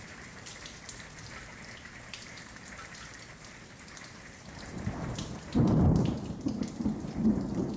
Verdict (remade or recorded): remade